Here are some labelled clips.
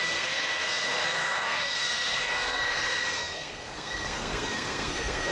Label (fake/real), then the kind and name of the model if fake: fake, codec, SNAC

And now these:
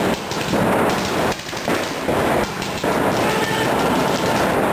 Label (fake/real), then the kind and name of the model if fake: real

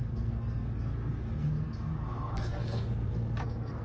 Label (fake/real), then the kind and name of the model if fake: fake, codec, SNAC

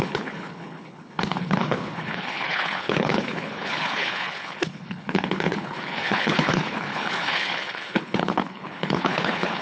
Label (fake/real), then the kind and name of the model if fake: fake, codec, HILCodec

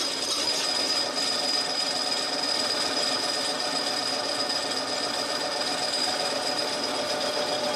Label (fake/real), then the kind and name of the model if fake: real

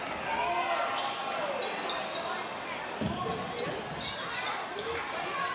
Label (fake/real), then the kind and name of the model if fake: real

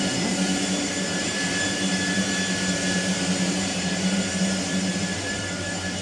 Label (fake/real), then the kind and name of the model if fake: fake, vocoder, BigVGAN v2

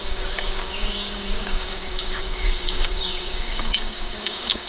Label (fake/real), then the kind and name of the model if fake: fake, codec, DAC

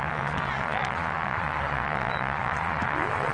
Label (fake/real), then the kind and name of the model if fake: fake, vocoder, Vocos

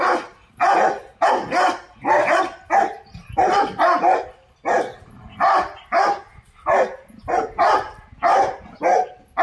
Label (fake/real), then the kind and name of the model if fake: real